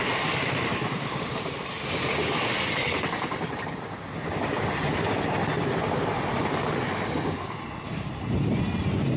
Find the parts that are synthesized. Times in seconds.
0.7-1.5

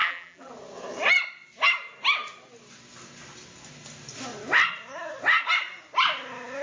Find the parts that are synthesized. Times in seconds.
0.0-0.5

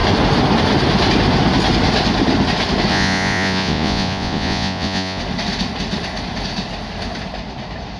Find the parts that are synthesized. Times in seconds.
2.9-5.2